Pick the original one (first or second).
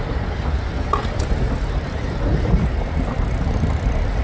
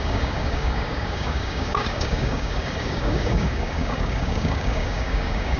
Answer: first